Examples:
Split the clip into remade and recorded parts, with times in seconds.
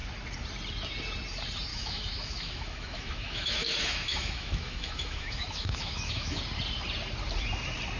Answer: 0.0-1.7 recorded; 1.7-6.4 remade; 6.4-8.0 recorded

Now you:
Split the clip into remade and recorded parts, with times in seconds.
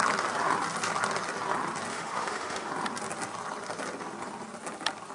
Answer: 0.0-1.9 recorded; 1.9-2.7 remade; 2.7-5.1 recorded